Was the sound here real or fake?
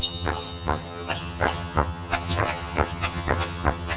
fake